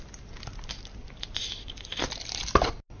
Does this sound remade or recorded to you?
recorded